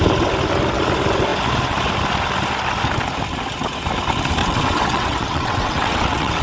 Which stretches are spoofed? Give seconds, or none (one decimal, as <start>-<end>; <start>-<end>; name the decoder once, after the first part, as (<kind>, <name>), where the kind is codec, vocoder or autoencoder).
4.4-6.4 (vocoder, WaveNeXt)